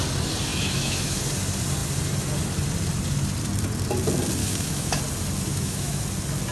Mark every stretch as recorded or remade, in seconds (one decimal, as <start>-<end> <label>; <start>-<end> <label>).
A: 0.0-0.5 recorded; 0.5-1.2 remade; 1.2-4.4 recorded; 4.4-5.0 remade; 5.0-5.5 recorded; 5.5-6.0 remade; 6.0-6.5 recorded

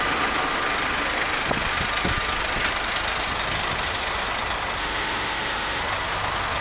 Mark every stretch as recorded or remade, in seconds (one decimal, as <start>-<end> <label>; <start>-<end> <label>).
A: 0.0-4.8 recorded; 4.8-5.8 remade; 5.8-6.6 recorded

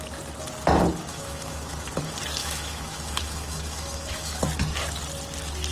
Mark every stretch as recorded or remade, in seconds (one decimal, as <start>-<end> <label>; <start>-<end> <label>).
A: 0.0-1.1 recorded; 1.1-1.9 remade; 1.9-2.4 recorded; 2.4-4.4 remade; 4.4-5.7 recorded